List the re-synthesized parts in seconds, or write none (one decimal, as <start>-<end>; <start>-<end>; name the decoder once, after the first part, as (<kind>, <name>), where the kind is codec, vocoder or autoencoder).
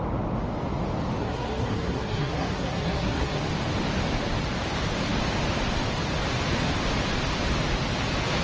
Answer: 1.2-3.4 (codec, SNAC)